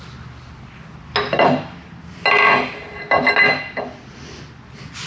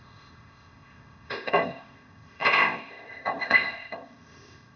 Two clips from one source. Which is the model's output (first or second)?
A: second